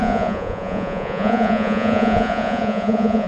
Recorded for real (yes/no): no